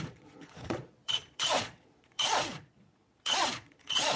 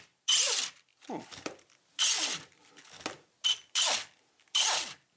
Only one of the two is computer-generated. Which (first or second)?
first